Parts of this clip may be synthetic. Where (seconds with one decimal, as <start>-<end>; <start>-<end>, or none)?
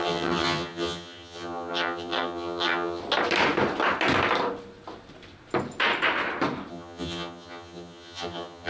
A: 0.0-3.0; 6.7-8.7